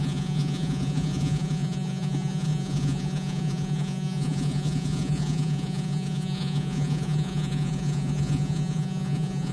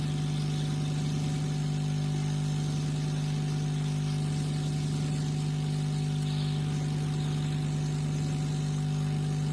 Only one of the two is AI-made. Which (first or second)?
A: first